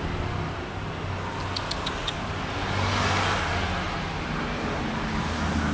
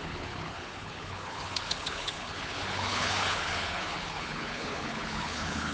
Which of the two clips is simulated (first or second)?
second